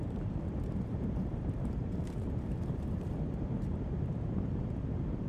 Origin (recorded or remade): remade